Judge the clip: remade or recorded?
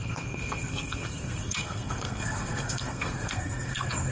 remade